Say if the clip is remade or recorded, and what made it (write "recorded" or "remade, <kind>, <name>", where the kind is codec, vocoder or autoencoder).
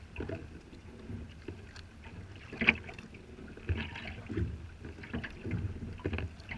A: recorded